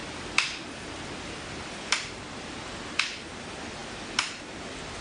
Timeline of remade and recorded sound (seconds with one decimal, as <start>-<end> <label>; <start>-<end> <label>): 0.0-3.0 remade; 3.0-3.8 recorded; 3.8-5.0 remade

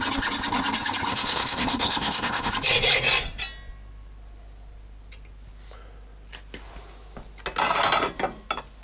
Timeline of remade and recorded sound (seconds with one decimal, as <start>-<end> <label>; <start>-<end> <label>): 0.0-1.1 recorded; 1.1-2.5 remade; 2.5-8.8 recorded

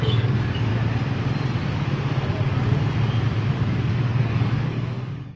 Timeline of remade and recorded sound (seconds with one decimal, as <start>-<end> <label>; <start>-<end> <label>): 0.0-0.7 remade; 0.7-3.9 recorded; 3.9-5.4 remade

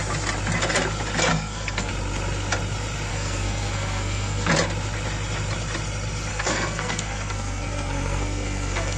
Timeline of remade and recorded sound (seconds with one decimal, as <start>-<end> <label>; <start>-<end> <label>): 0.0-1.3 recorded; 1.3-1.9 remade; 1.9-3.1 recorded; 3.1-4.5 remade; 4.5-6.3 recorded; 6.3-9.0 remade

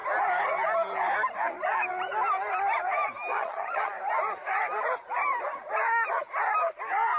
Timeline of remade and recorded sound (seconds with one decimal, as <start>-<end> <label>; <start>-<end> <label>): 0.0-3.3 recorded; 3.3-3.9 remade; 3.9-7.2 recorded

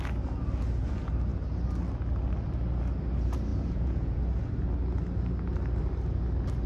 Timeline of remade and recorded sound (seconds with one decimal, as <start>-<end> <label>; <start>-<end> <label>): 0.0-3.5 recorded; 3.5-4.2 remade; 4.2-6.7 recorded

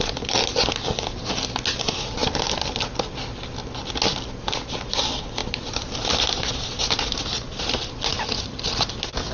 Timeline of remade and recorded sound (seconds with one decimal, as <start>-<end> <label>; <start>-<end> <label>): 0.0-9.3 recorded